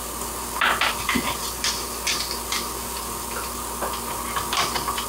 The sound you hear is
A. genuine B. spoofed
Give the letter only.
A